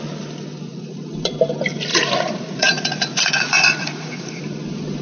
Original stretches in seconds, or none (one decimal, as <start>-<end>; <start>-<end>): 0.0-0.7; 1.3-1.9; 4.4-5.0